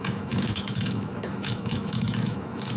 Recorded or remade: remade